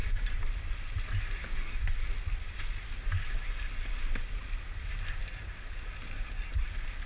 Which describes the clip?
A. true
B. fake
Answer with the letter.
A